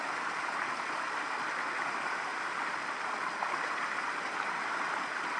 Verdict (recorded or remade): remade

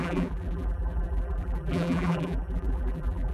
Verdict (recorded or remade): remade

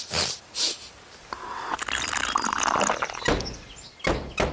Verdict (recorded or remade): recorded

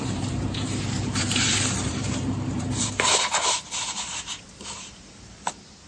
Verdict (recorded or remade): remade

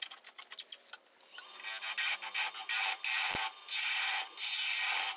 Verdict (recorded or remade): recorded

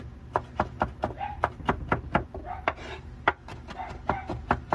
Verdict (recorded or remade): recorded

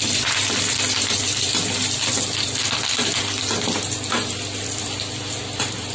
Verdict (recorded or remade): remade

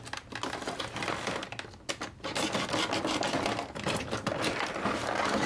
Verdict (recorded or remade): recorded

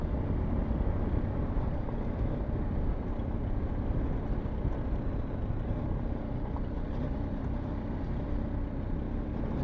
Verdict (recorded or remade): recorded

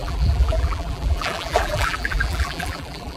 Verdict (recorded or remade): remade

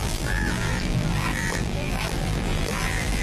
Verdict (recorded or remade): remade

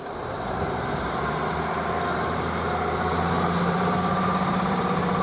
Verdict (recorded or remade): remade